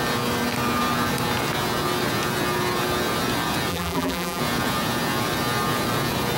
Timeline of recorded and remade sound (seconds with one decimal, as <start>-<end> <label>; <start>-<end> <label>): 0.0-3.7 recorded; 3.7-4.4 remade; 4.4-6.4 recorded

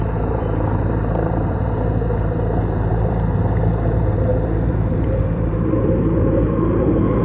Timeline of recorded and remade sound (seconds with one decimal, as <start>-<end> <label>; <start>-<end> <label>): 0.0-7.2 remade

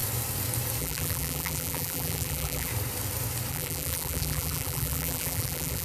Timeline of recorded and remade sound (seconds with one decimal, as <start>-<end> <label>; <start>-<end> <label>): 0.0-0.8 recorded; 0.8-2.7 remade; 2.7-3.5 recorded; 3.5-5.8 remade

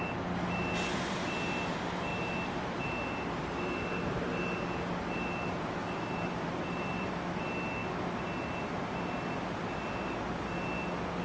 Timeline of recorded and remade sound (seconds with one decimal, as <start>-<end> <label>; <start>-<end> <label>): 0.0-2.1 recorded; 2.1-2.6 remade; 2.6-5.8 recorded; 5.8-7.1 remade; 7.1-11.2 recorded

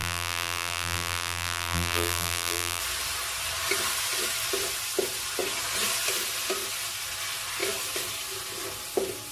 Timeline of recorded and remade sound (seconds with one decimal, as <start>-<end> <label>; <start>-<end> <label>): 0.0-2.8 remade; 2.8-9.3 recorded